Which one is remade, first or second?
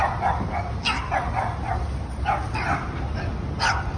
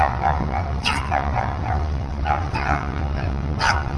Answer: second